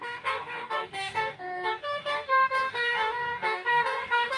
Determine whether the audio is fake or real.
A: fake